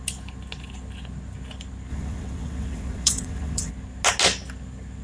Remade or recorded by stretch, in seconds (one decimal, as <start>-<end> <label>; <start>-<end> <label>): 0.0-1.9 recorded; 1.9-3.7 remade; 3.7-5.0 recorded